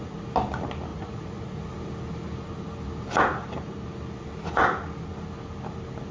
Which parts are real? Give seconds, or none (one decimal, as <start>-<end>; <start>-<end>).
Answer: 0.0-0.9; 1.6-6.1